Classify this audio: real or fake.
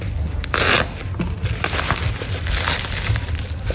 real